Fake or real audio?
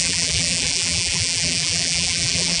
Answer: fake